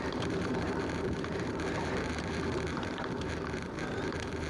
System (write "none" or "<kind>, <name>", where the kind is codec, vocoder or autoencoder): vocoder, BigVGAN v2